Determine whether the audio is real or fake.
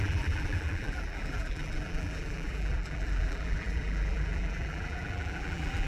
fake